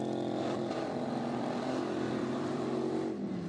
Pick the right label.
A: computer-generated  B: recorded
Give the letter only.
A